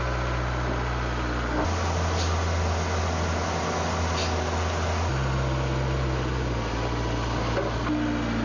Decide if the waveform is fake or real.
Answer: real